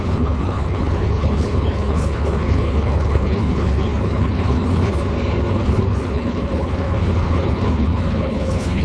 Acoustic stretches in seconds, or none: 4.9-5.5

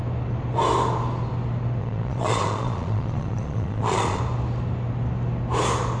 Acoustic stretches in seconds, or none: 0.0-1.8; 4.2-6.0

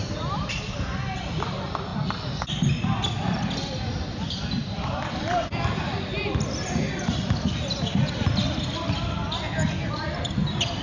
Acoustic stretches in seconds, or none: 0.0-10.8

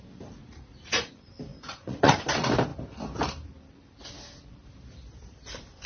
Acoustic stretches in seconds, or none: 0.0-0.4; 1.1-1.5; 2.2-5.9